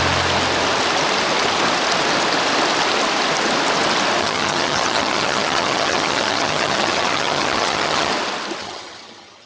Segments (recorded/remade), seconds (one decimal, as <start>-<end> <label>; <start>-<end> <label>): 0.0-4.2 recorded; 4.2-8.1 remade; 8.1-8.6 recorded; 8.6-9.5 remade